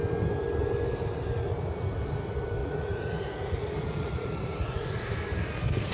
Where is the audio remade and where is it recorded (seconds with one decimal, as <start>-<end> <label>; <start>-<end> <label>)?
0.0-2.6 recorded; 2.6-5.1 remade; 5.1-5.9 recorded